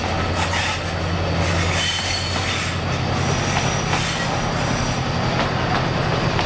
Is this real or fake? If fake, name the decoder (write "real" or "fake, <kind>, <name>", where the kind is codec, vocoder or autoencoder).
real